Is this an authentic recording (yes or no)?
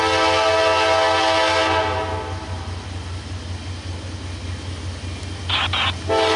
yes